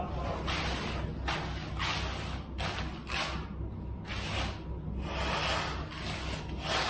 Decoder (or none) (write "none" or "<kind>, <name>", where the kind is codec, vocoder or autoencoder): none